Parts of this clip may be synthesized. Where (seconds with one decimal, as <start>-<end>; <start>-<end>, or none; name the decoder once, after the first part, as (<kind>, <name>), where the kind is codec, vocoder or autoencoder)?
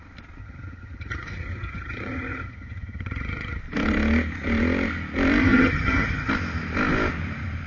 0.4-3.6 (vocoder, HiFi-GAN); 5.4-6.3